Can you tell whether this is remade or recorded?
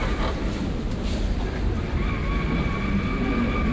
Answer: recorded